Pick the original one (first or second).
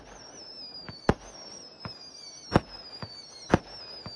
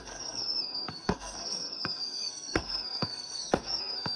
first